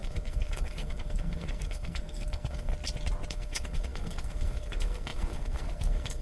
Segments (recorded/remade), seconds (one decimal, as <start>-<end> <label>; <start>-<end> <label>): 0.0-2.7 remade; 2.7-3.3 recorded; 3.3-6.2 remade